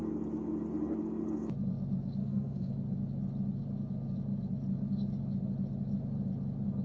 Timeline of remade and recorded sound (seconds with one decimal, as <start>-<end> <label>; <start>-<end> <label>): 0.0-2.2 recorded; 2.2-2.7 remade; 2.7-6.8 recorded